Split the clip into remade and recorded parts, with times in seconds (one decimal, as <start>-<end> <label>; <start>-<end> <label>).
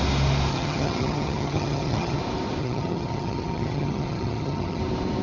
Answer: 0.0-0.5 recorded; 0.5-2.2 remade; 2.2-2.6 recorded; 2.6-4.8 remade; 4.8-5.2 recorded